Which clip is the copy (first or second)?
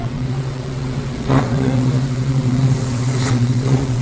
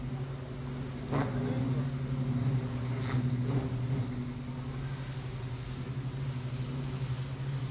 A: first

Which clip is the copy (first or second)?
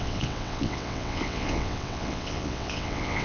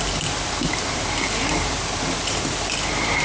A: first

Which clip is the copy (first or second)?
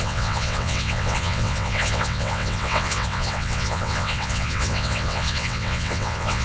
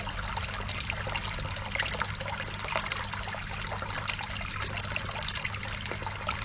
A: first